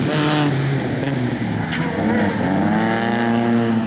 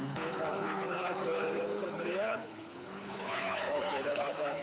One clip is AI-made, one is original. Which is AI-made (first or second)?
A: second